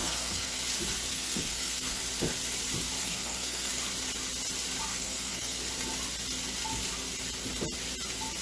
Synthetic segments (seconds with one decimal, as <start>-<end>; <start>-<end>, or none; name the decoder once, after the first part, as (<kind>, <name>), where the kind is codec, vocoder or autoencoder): 0.0-0.6 (codec, SNAC); 1.1-2.0; 3.0-3.7; 4.9-5.6